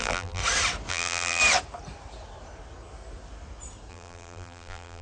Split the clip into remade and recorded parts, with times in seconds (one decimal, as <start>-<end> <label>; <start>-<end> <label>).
0.0-0.4 remade; 0.4-0.9 recorded; 0.9-1.4 remade; 1.4-3.9 recorded; 3.9-5.0 remade